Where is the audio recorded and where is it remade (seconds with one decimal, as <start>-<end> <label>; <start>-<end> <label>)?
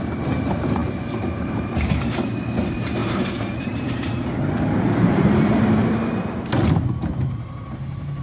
0.0-3.0 remade; 3.0-3.6 recorded; 3.6-6.0 remade; 6.0-7.2 recorded; 7.2-8.2 remade